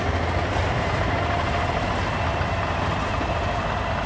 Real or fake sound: real